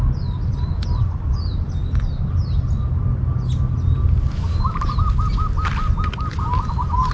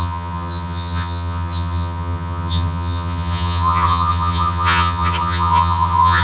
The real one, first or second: first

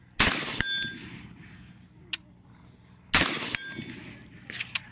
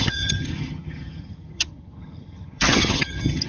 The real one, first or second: first